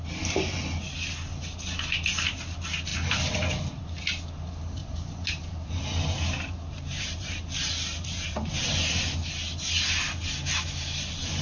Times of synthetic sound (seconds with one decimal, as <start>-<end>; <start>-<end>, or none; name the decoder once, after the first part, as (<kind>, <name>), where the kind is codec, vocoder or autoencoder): 4.8-9.0 (vocoder, BigVGAN v2)